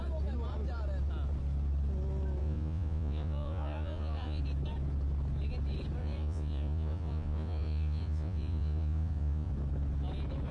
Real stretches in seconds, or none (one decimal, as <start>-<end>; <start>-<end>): 0.0-2.4; 4.4-6.0; 9.5-10.5